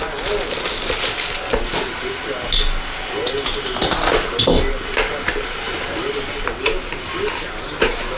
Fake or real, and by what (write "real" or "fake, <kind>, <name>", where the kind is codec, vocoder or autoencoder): real